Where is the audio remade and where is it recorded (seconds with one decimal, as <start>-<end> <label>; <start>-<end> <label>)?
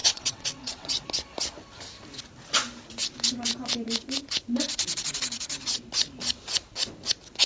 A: 0.0-1.0 remade; 1.0-7.5 recorded